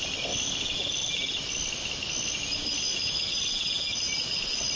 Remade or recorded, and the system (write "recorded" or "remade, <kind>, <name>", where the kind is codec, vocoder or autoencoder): recorded